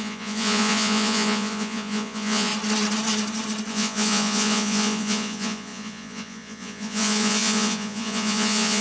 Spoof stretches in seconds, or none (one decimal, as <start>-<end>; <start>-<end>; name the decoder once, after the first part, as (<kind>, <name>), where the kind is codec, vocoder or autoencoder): 0.0-2.5 (vocoder, Vocos); 3.7-8.8